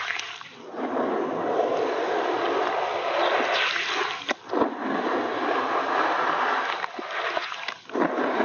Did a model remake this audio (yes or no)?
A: no